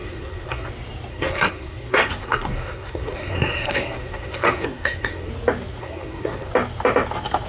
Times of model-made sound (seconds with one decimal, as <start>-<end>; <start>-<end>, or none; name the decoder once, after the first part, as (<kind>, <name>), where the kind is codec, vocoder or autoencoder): 0.0-0.7 (codec, SNAC); 1.1-5.3; 5.8-6.5